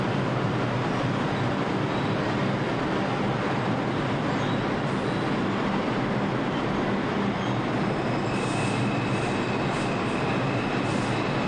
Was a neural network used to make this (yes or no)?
no